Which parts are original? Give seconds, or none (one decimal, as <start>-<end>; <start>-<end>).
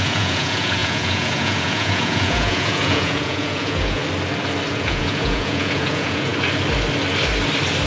4.0-4.7; 6.3-7.9